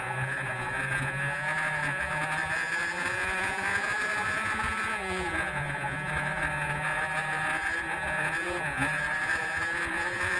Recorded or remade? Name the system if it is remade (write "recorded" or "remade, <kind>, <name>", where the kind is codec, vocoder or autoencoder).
remade, vocoder, Vocos